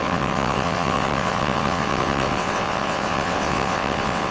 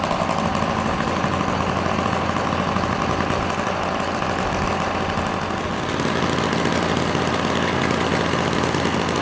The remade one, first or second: first